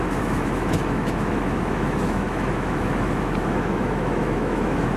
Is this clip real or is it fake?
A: fake